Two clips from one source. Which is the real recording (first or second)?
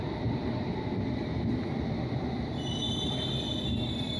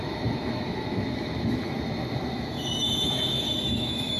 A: first